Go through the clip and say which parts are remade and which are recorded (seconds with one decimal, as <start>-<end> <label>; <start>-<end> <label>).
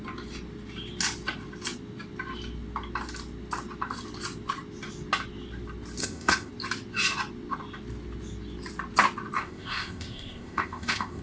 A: 0.0-6.0 recorded; 6.0-6.5 remade; 6.5-9.4 recorded; 9.4-11.2 remade